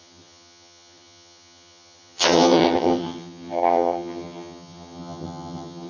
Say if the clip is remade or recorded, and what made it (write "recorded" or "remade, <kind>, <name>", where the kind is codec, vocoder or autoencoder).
remade, vocoder, HiFi-GAN